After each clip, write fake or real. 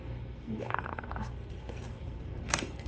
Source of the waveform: fake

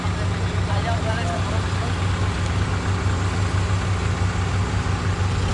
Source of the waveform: real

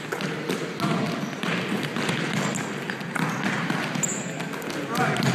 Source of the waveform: real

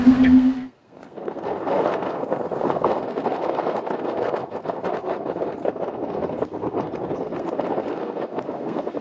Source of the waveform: fake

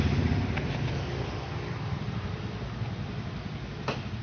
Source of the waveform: real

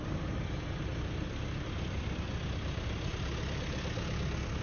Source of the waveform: real